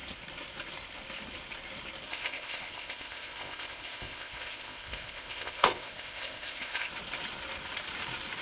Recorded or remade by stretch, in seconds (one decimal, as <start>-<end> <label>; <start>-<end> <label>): 0.0-2.1 recorded; 2.1-6.9 remade; 6.9-8.4 recorded